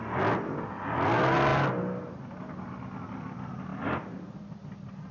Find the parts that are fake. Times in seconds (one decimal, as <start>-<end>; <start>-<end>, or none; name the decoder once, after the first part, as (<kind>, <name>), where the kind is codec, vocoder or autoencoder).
none